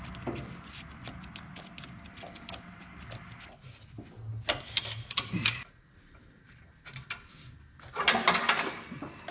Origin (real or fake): real